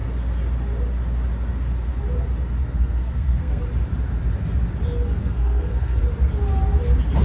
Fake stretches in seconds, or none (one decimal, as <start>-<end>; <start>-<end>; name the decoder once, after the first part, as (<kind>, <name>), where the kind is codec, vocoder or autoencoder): 2.6-3.6 (codec, SNAC); 5.2-6.0